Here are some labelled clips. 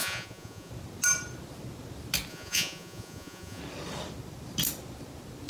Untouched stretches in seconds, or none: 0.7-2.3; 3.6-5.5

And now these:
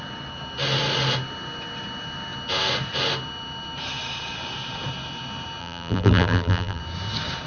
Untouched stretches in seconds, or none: 0.0-5.6; 6.8-7.5

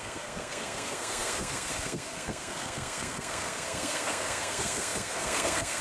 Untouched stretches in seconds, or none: none